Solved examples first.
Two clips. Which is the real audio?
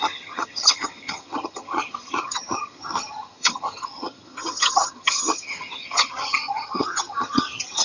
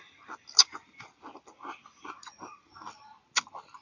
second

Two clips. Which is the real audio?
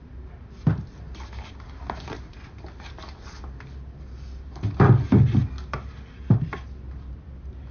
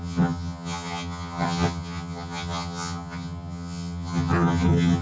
first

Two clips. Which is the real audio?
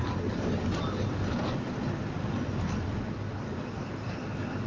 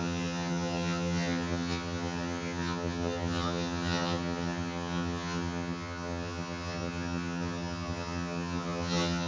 first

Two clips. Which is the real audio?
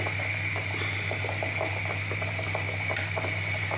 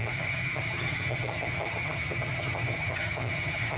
first